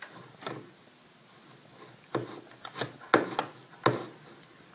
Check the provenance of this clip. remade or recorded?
recorded